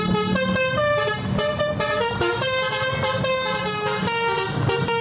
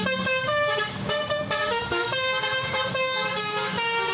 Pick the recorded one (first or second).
first